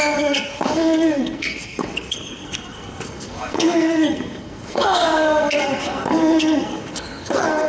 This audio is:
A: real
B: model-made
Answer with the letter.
B